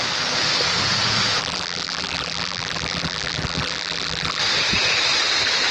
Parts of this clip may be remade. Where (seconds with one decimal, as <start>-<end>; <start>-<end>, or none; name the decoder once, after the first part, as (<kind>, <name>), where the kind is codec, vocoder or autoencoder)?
1.4-4.4 (vocoder, BigVGAN v2)

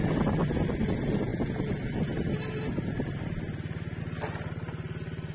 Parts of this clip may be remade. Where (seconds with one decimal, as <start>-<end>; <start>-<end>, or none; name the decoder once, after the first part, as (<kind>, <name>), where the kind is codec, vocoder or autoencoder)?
none

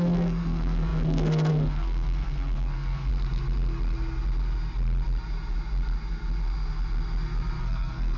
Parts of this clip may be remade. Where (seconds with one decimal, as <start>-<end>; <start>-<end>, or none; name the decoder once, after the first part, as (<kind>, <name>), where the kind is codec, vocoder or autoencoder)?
0.0-3.1 (codec, SNAC); 7.6-8.2

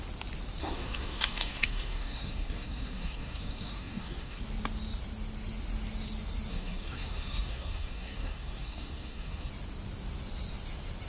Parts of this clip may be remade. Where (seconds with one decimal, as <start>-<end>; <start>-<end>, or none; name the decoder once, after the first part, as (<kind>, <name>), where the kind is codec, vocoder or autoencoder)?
0.6-4.4 (codec, SNAC); 6.5-9.5

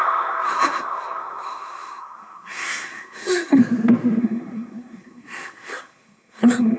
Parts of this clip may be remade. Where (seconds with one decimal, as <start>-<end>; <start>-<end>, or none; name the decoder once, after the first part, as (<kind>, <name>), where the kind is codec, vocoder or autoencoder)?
0.0-3.6 (codec, SNAC); 4.2-6.8

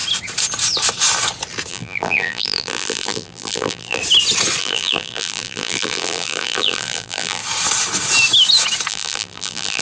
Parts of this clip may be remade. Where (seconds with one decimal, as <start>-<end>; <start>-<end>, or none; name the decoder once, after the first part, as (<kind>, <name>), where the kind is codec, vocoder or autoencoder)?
1.7-4.0 (vocoder, BigVGAN v2); 4.6-7.4; 8.9-9.8

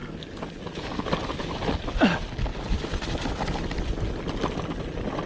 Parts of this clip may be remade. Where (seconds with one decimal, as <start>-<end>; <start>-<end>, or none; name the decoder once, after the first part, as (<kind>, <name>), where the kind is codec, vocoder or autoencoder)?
none

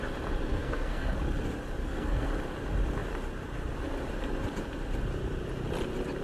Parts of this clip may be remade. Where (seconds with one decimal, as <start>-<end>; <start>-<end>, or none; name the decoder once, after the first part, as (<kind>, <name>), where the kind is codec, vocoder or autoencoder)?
0.4-1.2 (codec, SNAC); 1.8-2.3